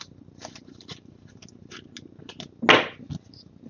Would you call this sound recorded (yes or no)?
yes